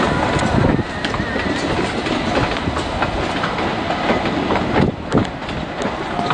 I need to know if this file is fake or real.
real